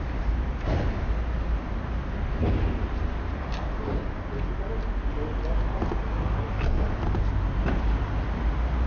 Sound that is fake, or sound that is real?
real